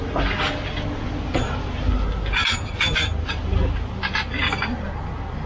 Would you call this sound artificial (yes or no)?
no